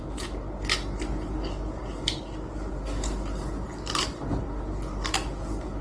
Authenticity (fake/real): real